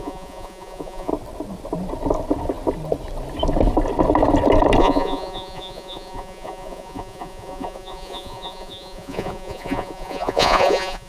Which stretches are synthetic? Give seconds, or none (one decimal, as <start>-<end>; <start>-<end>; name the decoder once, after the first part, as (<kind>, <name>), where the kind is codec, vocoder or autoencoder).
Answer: 0.0-1.1 (vocoder, Vocos); 4.8-11.1